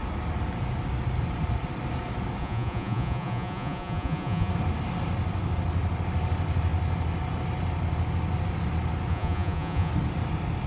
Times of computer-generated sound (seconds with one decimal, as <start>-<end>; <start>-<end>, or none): 2.4-4.5; 9.1-9.9